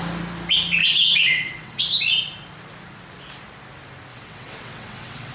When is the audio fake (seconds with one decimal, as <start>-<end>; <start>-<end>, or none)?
0.8-1.8; 4.1-5.3

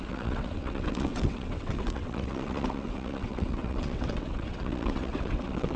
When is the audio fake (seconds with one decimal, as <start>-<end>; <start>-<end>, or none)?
0.0-5.8

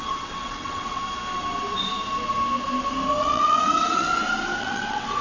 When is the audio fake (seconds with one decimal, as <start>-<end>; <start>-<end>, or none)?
0.0-1.0; 3.2-4.1; 4.6-5.2

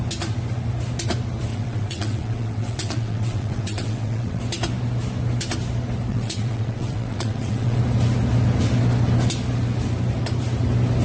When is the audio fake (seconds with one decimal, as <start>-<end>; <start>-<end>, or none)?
1.5-4.4; 6.1-7.8

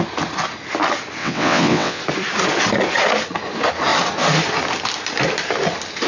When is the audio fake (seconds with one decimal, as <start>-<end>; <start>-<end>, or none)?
1.2-2.0

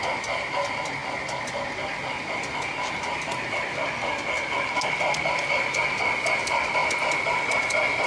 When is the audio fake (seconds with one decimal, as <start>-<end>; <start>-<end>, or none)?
none

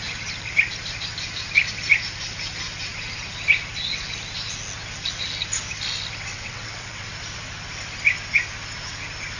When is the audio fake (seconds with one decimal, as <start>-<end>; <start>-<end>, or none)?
6.3-7.1